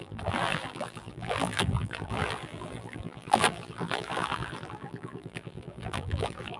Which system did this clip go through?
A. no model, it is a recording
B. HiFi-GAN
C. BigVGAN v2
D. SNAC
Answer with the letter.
C